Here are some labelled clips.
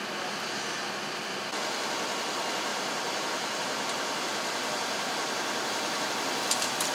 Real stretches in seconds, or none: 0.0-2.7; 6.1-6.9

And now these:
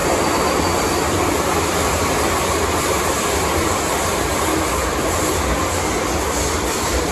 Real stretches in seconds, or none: 0.0-2.8; 4.5-5.1

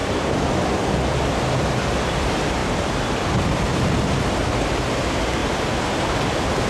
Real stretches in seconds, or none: none

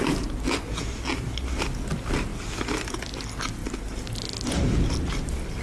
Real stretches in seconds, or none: 0.0-5.6